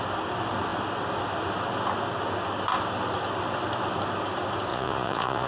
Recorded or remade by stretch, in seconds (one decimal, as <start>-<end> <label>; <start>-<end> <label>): 0.0-4.7 recorded; 4.7-5.5 remade